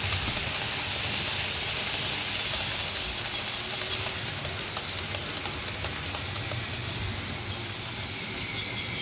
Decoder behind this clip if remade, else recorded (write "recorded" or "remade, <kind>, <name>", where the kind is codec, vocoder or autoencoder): recorded